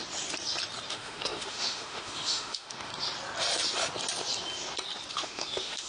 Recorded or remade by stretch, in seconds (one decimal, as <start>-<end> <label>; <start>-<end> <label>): 0.0-0.9 recorded; 0.9-2.9 remade; 2.9-5.1 recorded; 5.1-5.9 remade